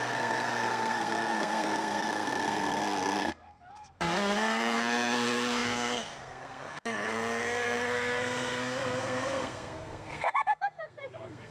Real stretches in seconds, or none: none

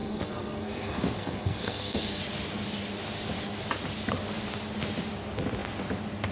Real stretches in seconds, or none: 2.2-6.3

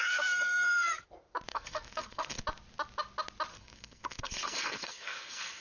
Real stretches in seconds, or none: 1.0-1.5; 2.4-3.5

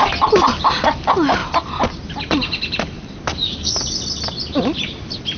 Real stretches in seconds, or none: 0.0-5.4